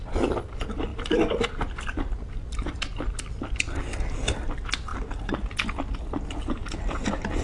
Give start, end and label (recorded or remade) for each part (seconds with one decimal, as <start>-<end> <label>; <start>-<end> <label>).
0.0-7.4 remade